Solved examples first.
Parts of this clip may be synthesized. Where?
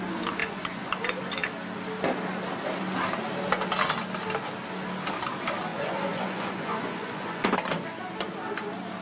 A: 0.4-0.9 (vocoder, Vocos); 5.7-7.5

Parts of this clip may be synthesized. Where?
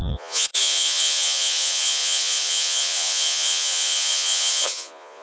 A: 0.0-5.2 (vocoder, Vocos)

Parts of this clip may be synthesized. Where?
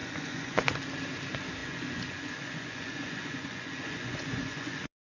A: 0.0-0.8 (vocoder, Vocos); 1.6-5.1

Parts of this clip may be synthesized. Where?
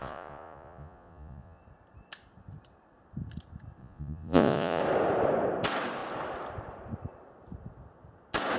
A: 0.0-1.6 (vocoder, Vocos); 3.8-4.8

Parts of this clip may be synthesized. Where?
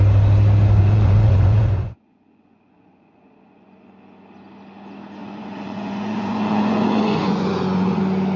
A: 0.8-3.7 (vocoder, Vocos); 5.2-8.0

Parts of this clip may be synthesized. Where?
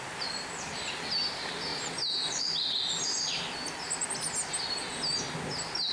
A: none